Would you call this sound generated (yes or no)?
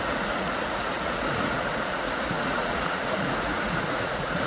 yes